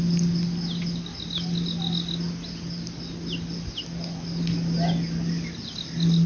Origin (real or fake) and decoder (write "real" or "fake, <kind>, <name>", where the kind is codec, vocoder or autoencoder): real